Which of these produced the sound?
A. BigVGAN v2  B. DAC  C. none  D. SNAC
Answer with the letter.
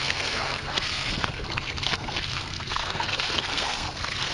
D